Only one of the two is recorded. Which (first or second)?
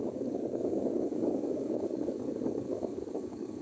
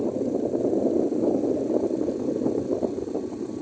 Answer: second